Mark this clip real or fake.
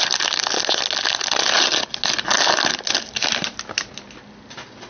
real